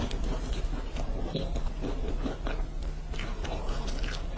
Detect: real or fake real